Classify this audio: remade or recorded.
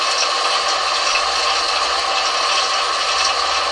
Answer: recorded